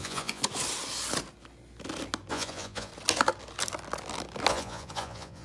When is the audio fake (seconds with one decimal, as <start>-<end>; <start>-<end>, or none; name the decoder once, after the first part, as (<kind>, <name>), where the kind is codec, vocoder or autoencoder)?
0.0-0.4 (vocoder, Vocos); 2.3-2.9; 4.5-5.4